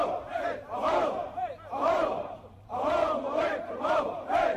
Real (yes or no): no